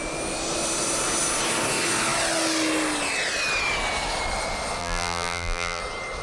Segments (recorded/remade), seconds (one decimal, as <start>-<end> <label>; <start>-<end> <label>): 0.0-4.8 recorded; 4.8-5.8 remade; 5.8-6.2 recorded